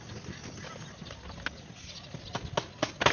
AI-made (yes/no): no